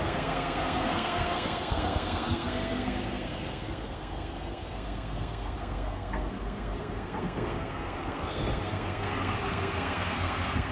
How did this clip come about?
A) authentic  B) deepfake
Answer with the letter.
B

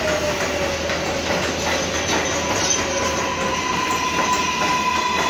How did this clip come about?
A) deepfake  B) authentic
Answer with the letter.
B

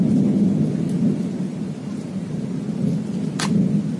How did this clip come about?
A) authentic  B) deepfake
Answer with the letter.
A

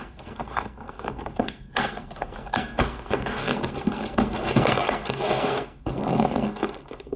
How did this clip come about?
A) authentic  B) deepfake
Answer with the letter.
B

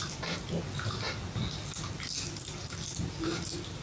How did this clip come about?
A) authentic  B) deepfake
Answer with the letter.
A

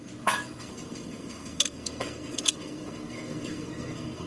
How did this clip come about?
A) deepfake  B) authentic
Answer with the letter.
A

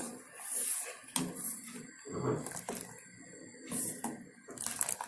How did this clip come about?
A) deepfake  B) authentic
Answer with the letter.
B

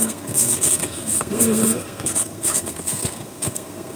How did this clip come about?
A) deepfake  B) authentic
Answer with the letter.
A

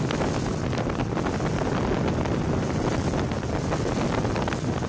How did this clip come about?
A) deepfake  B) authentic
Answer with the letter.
B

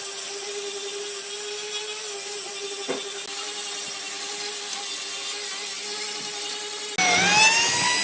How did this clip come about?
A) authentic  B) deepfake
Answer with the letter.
A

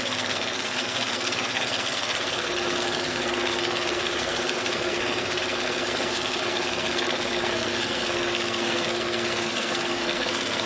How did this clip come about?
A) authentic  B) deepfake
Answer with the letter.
B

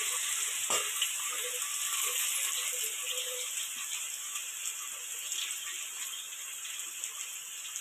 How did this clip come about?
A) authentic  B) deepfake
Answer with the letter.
A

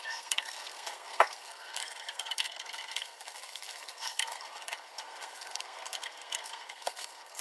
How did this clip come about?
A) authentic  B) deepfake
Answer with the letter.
B